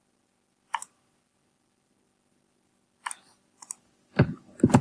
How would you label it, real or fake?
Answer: real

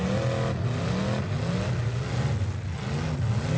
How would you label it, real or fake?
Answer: real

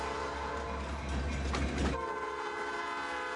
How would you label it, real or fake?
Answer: real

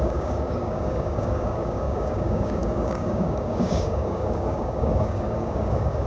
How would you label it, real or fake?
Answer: fake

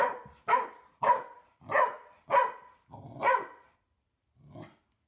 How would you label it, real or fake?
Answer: real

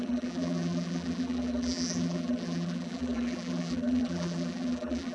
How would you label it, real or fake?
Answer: fake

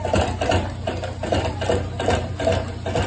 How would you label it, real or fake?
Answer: real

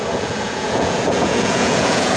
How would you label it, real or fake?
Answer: fake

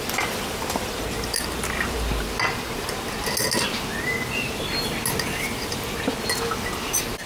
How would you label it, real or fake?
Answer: real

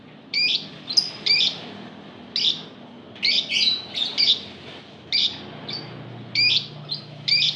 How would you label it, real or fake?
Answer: real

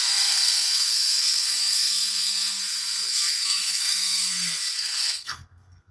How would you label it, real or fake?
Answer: fake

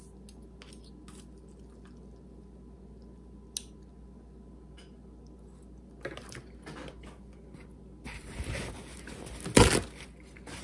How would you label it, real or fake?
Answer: real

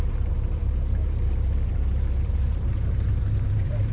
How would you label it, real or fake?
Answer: fake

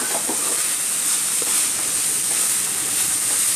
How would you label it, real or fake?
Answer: real